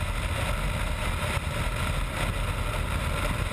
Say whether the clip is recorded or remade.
recorded